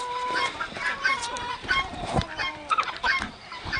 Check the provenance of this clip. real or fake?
fake